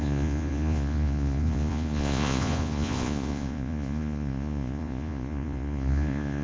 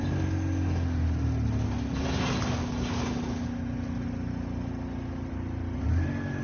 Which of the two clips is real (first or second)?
second